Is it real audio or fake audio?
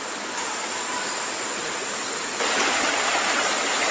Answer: real